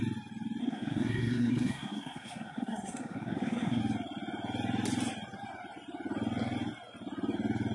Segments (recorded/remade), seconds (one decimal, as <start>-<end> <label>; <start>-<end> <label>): 0.0-0.6 recorded; 0.6-3.8 remade; 3.8-7.7 recorded